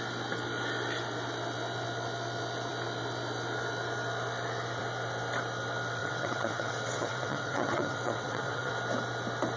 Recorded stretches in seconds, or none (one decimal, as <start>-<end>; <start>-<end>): 0.0-6.0; 8.7-9.6